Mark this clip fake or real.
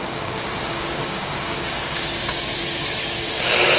fake